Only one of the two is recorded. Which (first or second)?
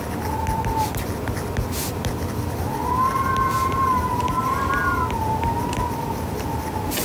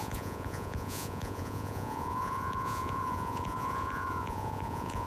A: first